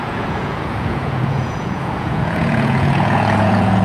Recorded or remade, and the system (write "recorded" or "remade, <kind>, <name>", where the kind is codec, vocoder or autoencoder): remade, vocoder, Vocos